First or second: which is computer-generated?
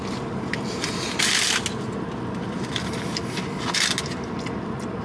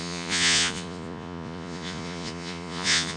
second